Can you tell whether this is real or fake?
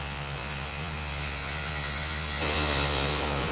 fake